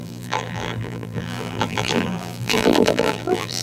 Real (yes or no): no